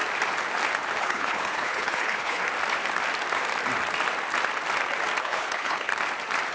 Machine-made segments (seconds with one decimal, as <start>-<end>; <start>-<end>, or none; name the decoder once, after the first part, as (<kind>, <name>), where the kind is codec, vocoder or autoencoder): 1.0-2.4 (codec, HILCodec); 5.2-5.9